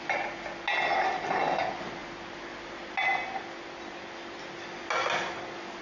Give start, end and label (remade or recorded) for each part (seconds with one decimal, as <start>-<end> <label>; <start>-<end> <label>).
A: 0.0-5.8 recorded